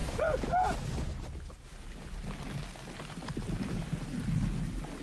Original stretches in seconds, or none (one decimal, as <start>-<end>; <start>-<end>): 0.0-5.0